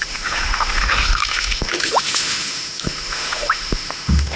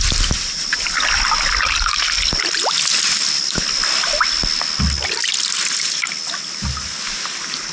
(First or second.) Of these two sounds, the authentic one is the second